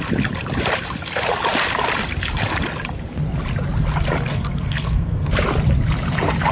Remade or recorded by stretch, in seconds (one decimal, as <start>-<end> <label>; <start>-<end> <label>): 0.0-4.3 recorded; 4.3-5.3 remade; 5.3-6.5 recorded